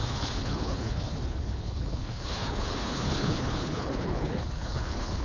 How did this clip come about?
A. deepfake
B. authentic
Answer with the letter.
A